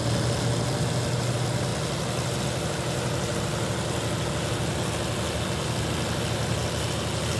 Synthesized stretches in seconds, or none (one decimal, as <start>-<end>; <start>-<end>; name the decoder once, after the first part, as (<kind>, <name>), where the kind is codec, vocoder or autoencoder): none